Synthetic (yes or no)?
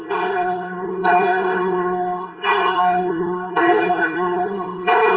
yes